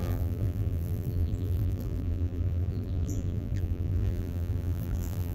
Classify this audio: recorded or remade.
remade